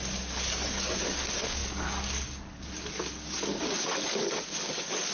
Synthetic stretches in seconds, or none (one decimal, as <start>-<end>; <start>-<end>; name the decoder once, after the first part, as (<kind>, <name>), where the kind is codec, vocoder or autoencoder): 0.0-5.1 (codec, DAC)